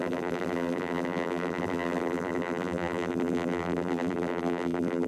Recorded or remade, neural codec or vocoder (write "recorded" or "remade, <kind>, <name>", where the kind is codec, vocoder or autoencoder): remade, vocoder, BigVGAN v2